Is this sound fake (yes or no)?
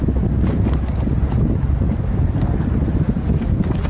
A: no